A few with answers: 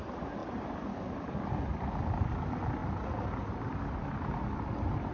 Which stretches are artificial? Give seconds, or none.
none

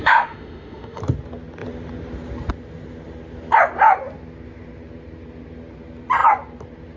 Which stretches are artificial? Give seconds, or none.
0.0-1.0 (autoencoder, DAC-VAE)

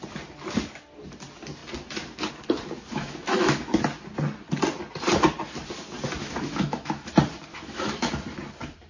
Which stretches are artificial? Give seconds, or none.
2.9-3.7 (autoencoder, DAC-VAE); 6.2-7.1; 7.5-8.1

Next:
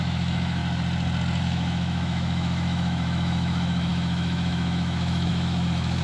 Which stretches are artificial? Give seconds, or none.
0.0-0.6 (autoencoder, DAC-VAE); 1.4-6.0

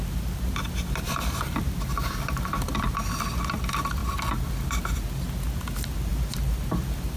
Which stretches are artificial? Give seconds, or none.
none

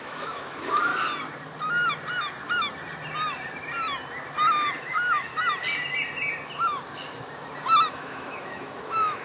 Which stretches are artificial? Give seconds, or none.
0.0-0.9 (autoencoder, DAC-VAE); 4.8-5.3; 7.9-9.2

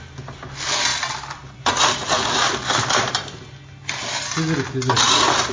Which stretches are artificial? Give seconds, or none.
none

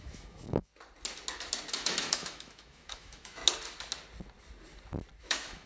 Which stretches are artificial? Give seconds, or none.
0.0-0.7 (autoencoder, DAC-VAE); 1.7-3.4; 5.2-5.7